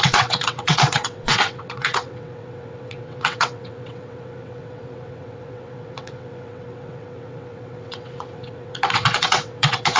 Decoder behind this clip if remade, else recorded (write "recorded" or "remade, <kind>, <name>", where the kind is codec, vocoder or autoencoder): remade, vocoder, WaveNeXt